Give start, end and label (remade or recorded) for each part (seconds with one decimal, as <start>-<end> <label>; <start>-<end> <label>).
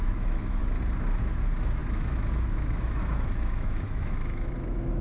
0.0-0.6 remade; 0.6-1.2 recorded; 1.2-5.0 remade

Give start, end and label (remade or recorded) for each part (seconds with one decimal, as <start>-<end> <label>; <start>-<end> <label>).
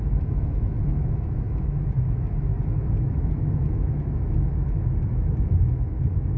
0.0-6.4 remade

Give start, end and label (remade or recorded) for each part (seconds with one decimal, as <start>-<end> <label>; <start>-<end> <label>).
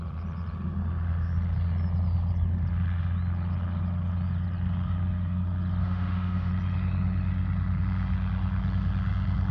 0.0-5.8 recorded; 5.8-6.5 remade; 6.5-9.5 recorded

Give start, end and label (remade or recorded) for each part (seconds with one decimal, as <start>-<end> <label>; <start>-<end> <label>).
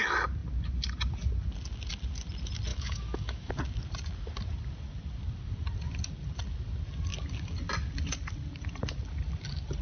0.0-2.7 recorded; 2.7-3.5 remade; 3.5-9.8 recorded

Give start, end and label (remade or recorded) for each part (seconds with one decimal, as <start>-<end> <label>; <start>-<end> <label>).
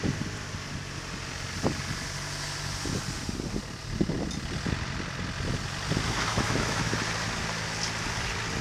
0.0-6.3 recorded; 6.3-6.9 remade; 6.9-8.6 recorded